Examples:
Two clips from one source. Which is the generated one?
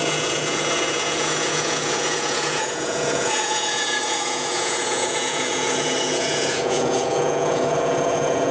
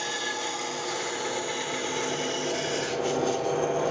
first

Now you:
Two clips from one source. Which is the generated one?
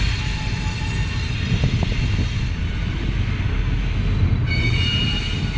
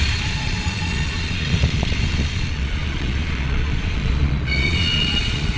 second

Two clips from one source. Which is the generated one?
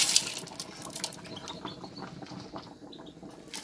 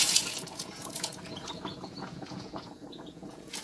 second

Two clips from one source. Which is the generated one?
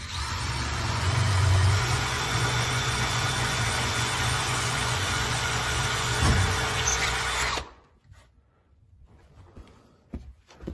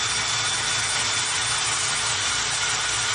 first